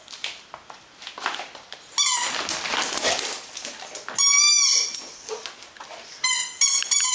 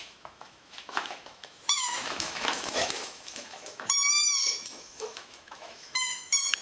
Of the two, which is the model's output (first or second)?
second